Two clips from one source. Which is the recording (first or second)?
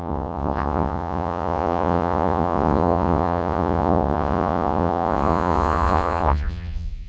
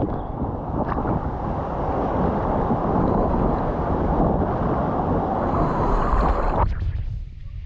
second